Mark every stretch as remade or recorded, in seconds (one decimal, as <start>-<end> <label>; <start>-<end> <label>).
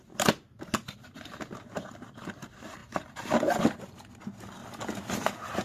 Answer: 0.0-2.8 recorded; 2.8-4.1 remade; 4.1-5.6 recorded